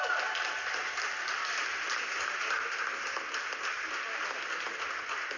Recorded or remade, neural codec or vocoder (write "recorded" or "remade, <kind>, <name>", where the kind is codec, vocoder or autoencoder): recorded